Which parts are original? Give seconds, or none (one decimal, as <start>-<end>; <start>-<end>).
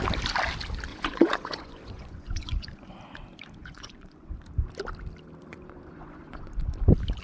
0.0-0.9; 3.0-3.6; 4.4-5.5; 6.5-7.2